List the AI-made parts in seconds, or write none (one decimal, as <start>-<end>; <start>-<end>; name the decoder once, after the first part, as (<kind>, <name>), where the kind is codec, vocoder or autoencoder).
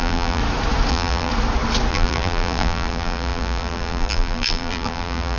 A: 0.0-0.4 (vocoder, BigVGAN v2); 0.9-1.3; 1.9-5.4